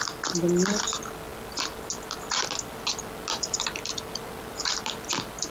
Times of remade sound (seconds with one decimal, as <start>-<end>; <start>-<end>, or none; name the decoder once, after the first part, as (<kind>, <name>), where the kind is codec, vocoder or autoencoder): none